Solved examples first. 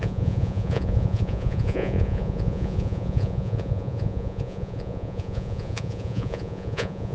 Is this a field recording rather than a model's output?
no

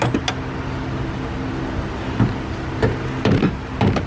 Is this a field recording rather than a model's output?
yes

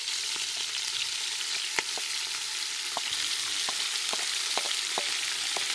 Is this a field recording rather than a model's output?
yes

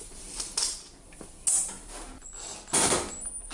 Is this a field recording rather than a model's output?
yes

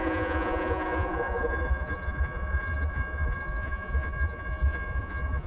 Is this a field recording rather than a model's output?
no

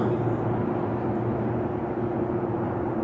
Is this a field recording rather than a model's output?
yes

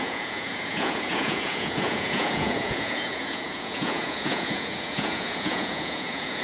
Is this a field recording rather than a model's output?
no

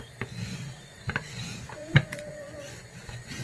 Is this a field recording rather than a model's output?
no